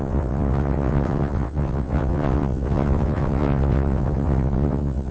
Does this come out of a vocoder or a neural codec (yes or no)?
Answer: yes